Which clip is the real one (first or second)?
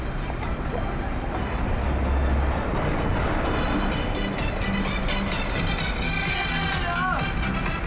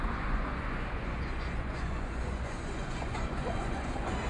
first